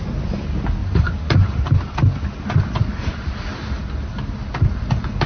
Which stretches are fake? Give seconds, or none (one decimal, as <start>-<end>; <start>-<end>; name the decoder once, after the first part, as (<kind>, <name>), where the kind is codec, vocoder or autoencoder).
0.8-1.8 (vocoder, BigVGAN v2)

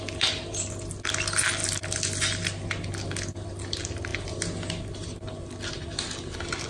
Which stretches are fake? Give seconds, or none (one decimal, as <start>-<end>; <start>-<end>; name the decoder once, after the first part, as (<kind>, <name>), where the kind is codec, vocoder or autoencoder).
none